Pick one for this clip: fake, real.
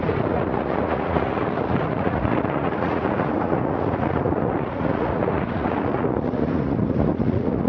fake